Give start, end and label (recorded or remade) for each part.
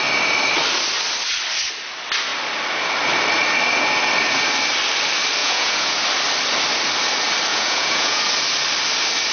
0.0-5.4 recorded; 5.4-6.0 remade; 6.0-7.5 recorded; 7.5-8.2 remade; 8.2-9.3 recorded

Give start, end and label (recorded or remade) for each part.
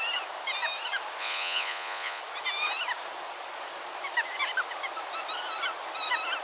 0.0-1.2 recorded; 1.2-2.2 remade; 2.2-6.4 recorded